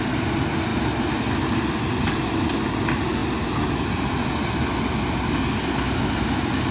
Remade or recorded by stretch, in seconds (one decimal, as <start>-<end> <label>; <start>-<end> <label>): 0.0-6.7 recorded